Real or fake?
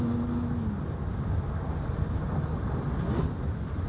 real